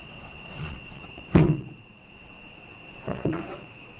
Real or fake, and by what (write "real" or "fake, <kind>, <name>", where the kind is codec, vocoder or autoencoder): fake, vocoder, WaveNeXt